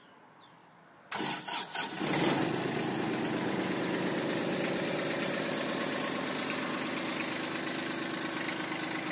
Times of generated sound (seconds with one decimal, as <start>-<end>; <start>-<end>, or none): none